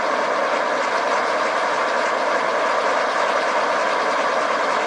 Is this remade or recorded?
recorded